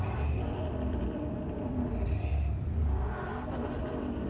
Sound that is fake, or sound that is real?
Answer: fake